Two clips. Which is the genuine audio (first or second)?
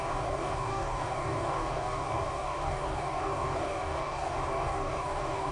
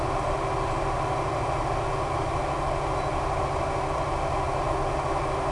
second